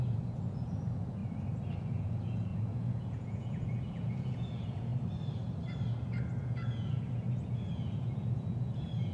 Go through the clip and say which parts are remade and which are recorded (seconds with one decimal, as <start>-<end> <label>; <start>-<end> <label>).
0.0-1.2 remade; 1.2-1.8 recorded; 1.8-4.9 remade; 4.9-6.4 recorded; 6.4-9.1 remade